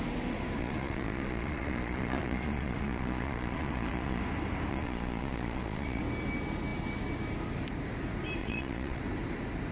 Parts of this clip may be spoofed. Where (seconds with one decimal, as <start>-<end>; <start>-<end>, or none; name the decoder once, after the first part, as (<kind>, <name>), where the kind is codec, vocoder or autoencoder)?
0.6-4.2 (vocoder, Vocos); 4.7-6.0; 8.4-9.0